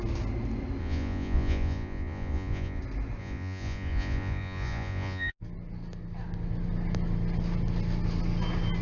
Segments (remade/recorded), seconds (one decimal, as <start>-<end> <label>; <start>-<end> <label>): 0.0-0.8 recorded; 0.8-2.8 remade; 2.8-3.2 recorded; 3.2-5.3 remade; 5.3-8.8 recorded